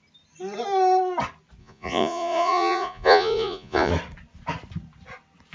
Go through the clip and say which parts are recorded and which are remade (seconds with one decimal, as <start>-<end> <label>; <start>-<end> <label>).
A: 0.0-1.6 recorded; 1.6-3.9 remade; 3.9-5.5 recorded